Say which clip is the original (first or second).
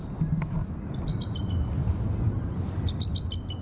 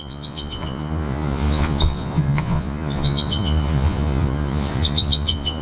first